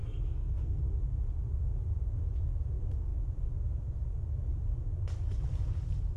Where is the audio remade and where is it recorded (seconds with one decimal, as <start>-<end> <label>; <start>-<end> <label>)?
0.0-0.8 remade; 0.8-6.2 recorded